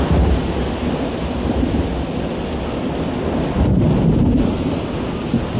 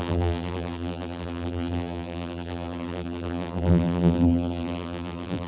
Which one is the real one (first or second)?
first